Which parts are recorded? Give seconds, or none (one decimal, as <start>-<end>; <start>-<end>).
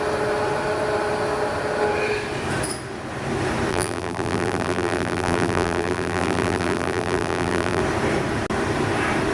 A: 0.0-3.7; 7.8-9.3